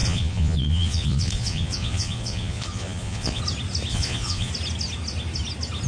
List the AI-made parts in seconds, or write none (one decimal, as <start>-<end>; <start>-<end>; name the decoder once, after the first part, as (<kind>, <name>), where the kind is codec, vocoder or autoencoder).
0.0-3.4 (vocoder, Vocos); 3.9-4.5